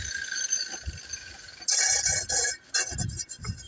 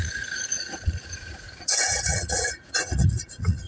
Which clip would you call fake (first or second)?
second